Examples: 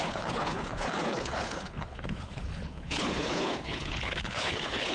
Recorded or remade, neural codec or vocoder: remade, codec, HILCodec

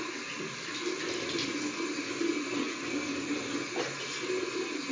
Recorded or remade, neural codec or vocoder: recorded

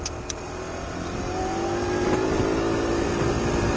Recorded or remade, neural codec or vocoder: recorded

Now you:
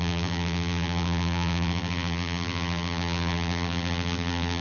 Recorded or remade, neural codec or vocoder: remade, vocoder, BigVGAN v2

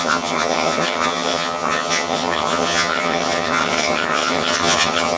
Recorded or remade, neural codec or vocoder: remade, vocoder, HiFi-GAN